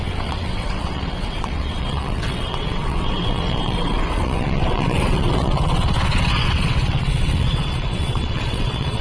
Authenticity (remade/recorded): remade